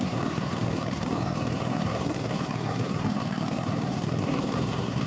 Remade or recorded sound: remade